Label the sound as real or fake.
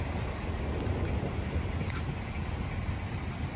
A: real